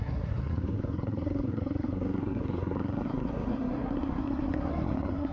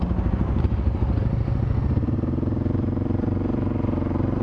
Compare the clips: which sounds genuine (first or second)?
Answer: second